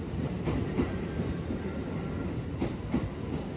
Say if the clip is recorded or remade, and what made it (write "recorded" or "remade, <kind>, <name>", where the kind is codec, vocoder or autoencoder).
recorded